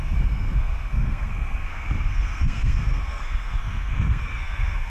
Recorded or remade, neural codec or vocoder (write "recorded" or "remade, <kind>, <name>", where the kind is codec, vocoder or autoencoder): remade, codec, SNAC